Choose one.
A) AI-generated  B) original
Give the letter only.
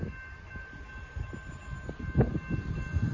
B